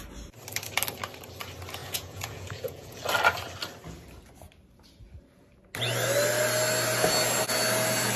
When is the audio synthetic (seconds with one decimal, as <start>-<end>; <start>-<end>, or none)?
1.8-3.0